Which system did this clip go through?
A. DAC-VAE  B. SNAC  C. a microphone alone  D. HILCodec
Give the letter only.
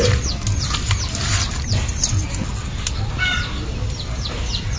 C